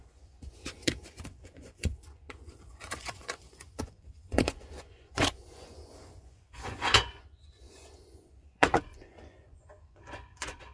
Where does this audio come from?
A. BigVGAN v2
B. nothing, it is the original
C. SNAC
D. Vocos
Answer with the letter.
D